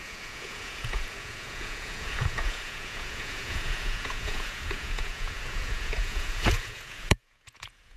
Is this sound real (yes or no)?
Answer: no